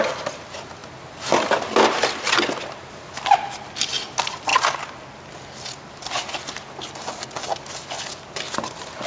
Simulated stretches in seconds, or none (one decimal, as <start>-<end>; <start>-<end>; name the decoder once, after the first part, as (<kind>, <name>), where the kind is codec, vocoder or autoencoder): none